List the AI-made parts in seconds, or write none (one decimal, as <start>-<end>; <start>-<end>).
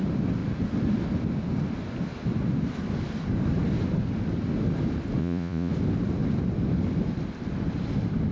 5.2-5.7